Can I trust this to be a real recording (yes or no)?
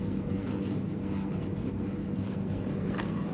no